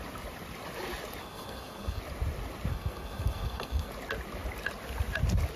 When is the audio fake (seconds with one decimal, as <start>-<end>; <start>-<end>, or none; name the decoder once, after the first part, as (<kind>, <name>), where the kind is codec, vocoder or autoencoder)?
1.2-2.0 (codec, SNAC); 2.7-3.9